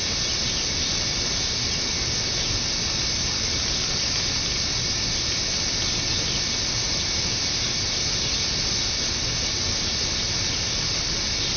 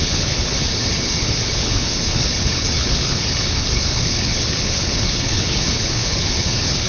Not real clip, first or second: second